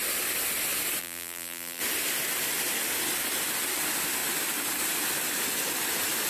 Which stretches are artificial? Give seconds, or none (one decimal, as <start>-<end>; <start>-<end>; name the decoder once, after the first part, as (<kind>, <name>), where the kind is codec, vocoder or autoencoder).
1.0-1.8 (vocoder, BigVGAN v2)